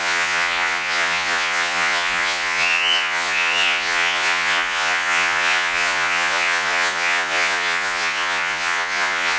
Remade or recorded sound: remade